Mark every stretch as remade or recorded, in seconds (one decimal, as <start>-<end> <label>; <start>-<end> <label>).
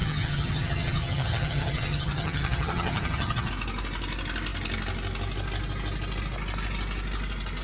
0.0-3.5 remade; 3.5-7.6 recorded